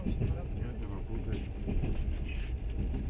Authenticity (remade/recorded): recorded